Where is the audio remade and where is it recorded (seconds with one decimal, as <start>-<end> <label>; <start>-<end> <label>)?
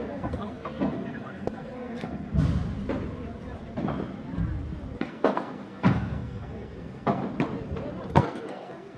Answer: 0.0-2.3 remade; 2.3-5.0 recorded; 5.0-7.2 remade; 7.2-8.1 recorded; 8.1-9.0 remade